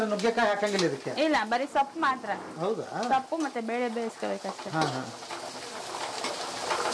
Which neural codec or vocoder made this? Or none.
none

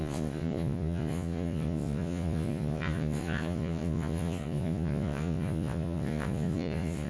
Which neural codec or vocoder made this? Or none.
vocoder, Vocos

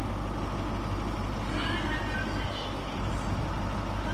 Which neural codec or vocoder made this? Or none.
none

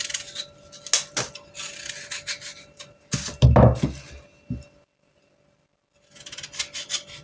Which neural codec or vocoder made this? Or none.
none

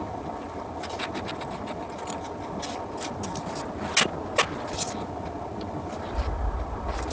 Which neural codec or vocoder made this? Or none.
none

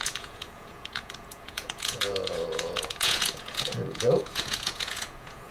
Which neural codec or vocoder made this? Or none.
vocoder, Vocos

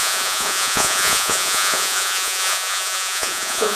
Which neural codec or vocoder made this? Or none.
vocoder, Vocos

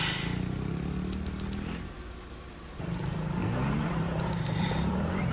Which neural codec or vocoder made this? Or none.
none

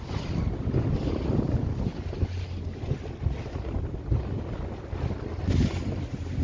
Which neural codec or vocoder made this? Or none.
none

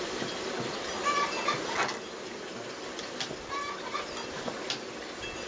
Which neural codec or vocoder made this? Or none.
none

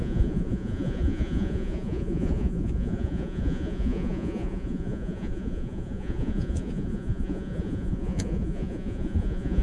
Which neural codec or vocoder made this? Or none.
vocoder, Vocos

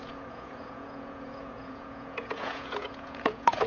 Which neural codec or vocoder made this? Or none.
vocoder, Vocos